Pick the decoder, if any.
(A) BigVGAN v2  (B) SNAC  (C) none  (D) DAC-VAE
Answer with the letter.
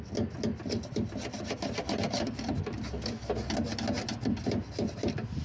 C